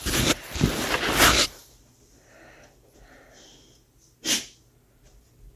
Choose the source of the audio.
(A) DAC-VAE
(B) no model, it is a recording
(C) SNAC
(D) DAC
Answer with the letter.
B